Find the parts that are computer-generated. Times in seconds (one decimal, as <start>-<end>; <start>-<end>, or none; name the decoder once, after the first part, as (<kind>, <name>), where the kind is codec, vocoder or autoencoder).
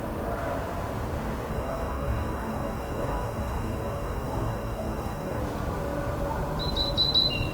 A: 1.5-5.4 (codec, DAC)